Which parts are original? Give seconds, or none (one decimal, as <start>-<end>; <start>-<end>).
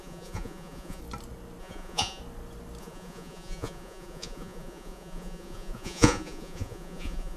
1.0-1.6; 2.2-2.8